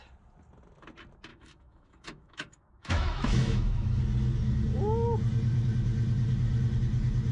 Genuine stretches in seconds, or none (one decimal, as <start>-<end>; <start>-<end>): 0.0-1.3; 4.0-7.3